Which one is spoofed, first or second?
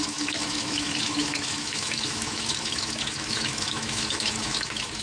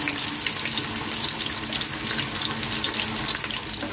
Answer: first